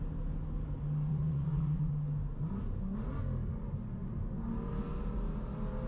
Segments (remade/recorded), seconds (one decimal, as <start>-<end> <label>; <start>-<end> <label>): 0.0-1.1 recorded; 1.1-1.9 remade; 1.9-5.9 recorded